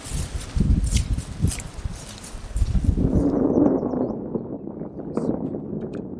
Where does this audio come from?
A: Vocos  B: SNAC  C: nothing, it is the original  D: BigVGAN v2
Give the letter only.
C